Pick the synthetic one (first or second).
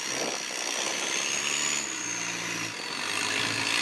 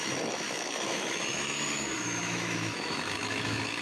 second